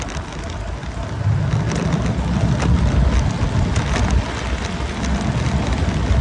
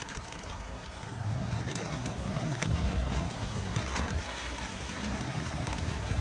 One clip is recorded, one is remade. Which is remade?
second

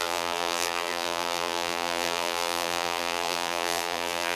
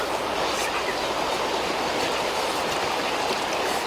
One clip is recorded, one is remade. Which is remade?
first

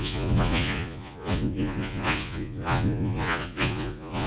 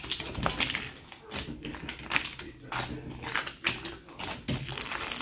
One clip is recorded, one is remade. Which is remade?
first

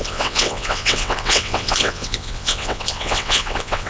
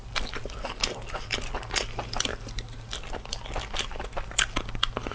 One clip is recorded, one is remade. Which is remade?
first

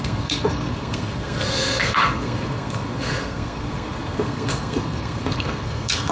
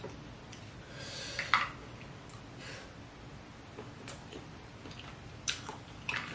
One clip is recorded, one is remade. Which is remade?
first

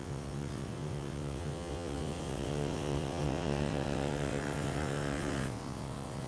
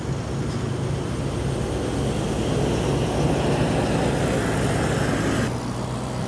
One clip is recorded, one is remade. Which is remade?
first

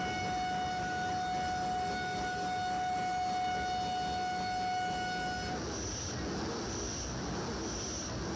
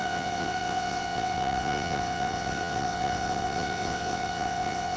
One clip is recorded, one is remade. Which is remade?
second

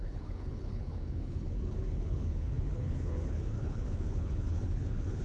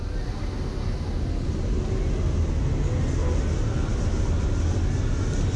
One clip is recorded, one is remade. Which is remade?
first